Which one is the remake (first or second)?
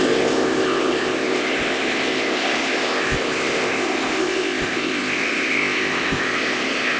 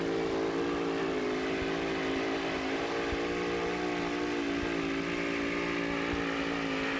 first